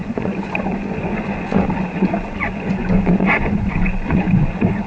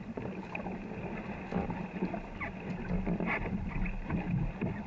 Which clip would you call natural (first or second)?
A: second